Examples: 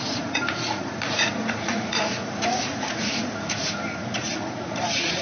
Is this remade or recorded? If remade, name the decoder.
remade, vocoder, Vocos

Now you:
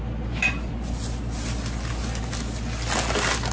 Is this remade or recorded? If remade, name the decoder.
recorded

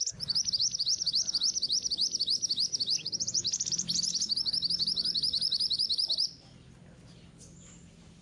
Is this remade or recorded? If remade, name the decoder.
remade, vocoder, BigVGAN v2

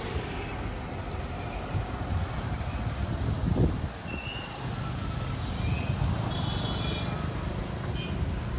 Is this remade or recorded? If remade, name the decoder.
recorded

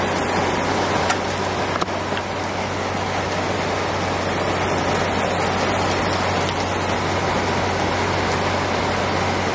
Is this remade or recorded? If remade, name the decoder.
recorded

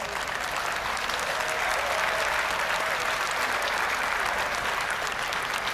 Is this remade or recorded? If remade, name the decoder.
recorded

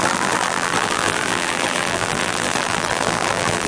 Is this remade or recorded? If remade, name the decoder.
remade, vocoder, BigVGAN v2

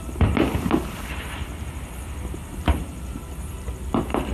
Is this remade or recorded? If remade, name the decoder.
recorded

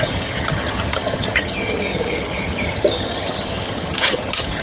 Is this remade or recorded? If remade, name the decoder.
remade, vocoder, HiFi-GAN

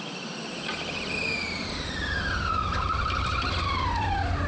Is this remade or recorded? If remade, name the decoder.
recorded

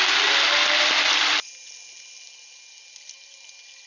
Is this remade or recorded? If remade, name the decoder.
recorded